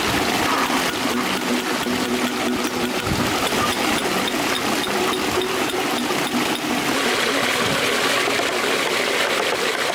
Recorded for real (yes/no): yes